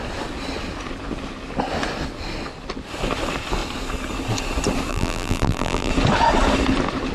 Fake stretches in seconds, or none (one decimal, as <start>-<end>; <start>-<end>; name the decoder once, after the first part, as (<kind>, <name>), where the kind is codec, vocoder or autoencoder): 4.9-5.9 (vocoder, BigVGAN v2)